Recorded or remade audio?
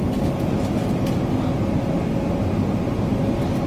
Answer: recorded